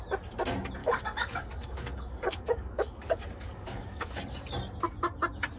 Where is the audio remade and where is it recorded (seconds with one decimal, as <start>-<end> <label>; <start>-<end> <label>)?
0.0-0.8 recorded; 0.8-4.2 remade; 4.2-5.6 recorded